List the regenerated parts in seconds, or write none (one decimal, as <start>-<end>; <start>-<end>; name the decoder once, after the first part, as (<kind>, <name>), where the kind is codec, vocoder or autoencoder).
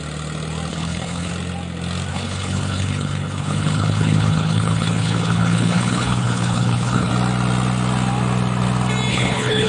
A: 0.7-1.3 (codec, HILCodec); 2.1-7.1; 9.1-9.7